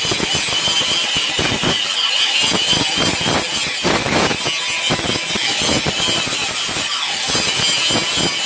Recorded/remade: recorded